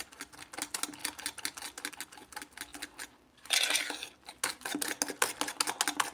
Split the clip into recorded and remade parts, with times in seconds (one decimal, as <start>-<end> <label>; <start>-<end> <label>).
0.0-6.1 recorded

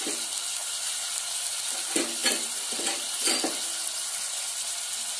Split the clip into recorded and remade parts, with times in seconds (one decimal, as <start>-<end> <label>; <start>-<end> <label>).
0.0-5.2 recorded

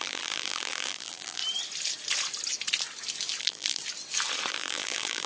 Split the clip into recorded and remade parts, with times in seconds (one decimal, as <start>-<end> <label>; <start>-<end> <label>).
0.0-1.4 remade; 1.4-3.4 recorded; 3.4-3.8 remade; 3.8-4.5 recorded; 4.5-5.3 remade

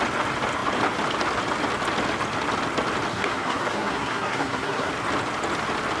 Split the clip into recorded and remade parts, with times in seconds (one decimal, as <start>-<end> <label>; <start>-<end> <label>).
0.0-3.1 recorded; 3.1-4.9 remade; 4.9-6.0 recorded

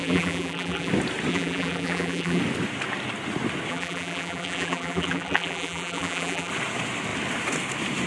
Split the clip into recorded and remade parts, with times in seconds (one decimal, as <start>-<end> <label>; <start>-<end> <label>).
0.0-0.9 remade; 0.9-1.3 recorded; 1.3-2.4 remade; 2.4-3.7 recorded; 3.7-6.5 remade; 6.5-8.1 recorded

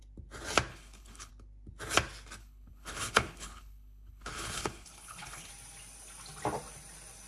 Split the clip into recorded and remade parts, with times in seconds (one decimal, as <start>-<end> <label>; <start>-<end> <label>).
0.0-0.7 recorded; 0.7-1.3 remade; 1.3-2.4 recorded; 2.4-5.5 remade; 5.5-7.3 recorded

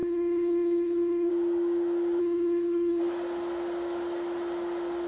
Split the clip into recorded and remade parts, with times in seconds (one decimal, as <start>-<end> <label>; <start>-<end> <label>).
0.0-1.3 remade; 1.3-2.2 recorded; 2.2-3.0 remade; 3.0-5.1 recorded

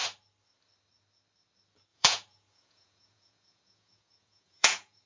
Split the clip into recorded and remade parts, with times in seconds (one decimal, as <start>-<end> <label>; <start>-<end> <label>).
0.0-1.9 recorded; 1.9-5.1 remade